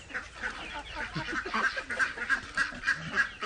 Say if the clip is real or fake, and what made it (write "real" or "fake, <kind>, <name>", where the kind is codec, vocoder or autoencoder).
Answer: real